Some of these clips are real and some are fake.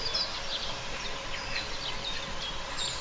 real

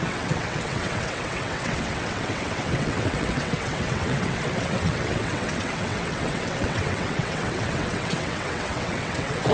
fake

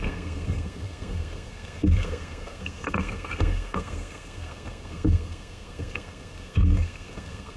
fake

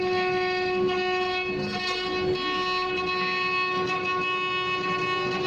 real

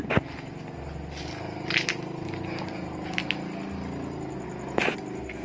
real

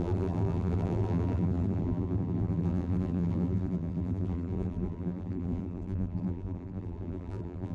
fake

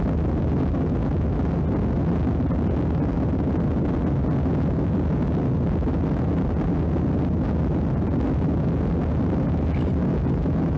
real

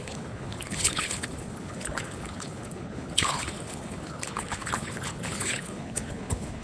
fake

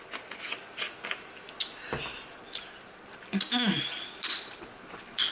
real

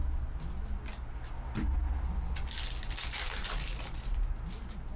real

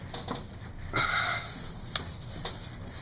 real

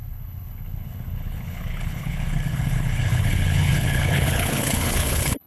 fake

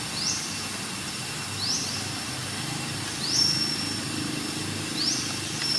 real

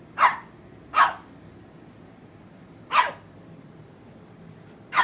real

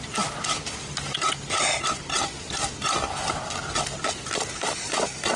real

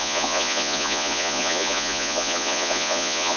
fake